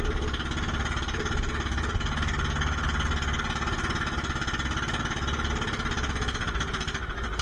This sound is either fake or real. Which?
real